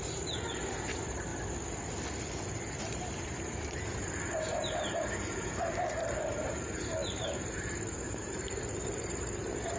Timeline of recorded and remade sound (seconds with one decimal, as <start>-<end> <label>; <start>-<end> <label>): 0.0-1.3 remade; 1.3-2.8 recorded; 2.8-9.8 remade